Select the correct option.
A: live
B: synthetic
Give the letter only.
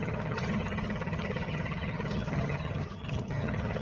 B